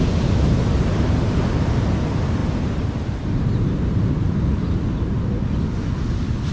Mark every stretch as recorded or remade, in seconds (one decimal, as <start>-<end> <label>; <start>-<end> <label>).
0.0-2.4 recorded; 2.4-4.1 remade; 4.1-6.5 recorded